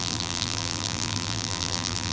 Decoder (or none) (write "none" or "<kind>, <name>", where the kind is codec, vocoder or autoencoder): vocoder, BigVGAN v2